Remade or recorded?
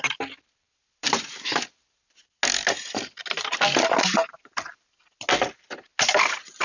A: recorded